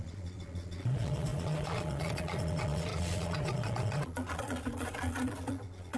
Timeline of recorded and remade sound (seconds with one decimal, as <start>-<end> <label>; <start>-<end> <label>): 0.0-6.0 remade